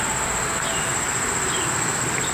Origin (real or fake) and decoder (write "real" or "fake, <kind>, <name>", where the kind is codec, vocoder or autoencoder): real